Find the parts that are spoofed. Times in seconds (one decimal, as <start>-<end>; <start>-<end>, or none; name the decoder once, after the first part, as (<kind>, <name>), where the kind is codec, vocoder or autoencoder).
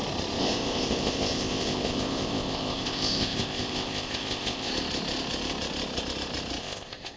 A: 0.4-4.7 (codec, ZipCodec); 6.6-7.2